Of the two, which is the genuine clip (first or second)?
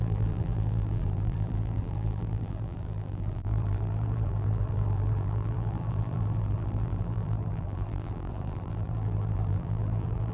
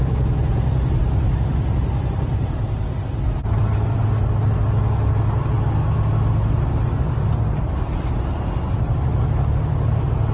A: second